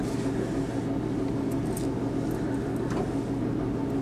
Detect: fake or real real